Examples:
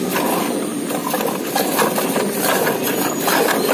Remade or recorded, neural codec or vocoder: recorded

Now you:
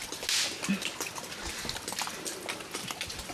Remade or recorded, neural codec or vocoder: recorded